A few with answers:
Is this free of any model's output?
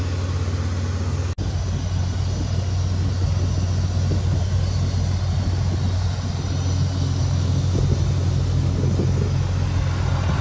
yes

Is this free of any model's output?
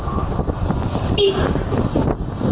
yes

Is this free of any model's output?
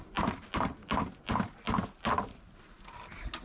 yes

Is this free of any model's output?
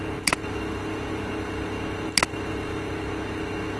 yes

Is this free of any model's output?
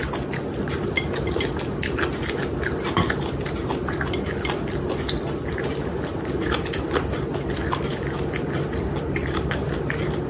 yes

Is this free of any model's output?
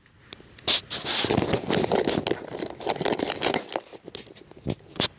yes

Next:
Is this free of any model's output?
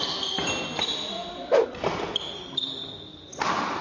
yes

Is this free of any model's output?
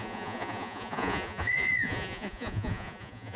no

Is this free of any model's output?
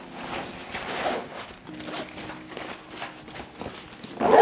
yes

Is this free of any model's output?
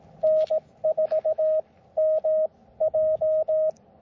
yes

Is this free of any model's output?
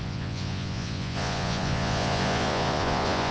no